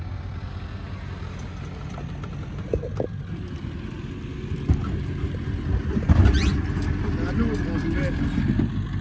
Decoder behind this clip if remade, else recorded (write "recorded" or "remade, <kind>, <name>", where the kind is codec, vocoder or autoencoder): recorded